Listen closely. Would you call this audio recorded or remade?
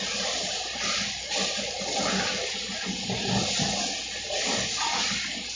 recorded